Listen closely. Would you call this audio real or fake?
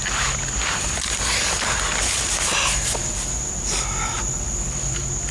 real